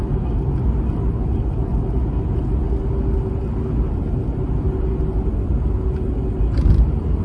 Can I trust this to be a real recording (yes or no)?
yes